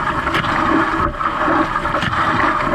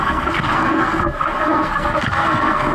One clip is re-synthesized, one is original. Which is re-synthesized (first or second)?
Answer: second